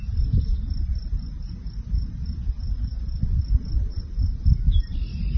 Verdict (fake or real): real